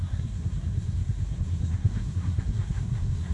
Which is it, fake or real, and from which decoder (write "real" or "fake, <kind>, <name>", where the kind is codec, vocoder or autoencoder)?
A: fake, codec, SNAC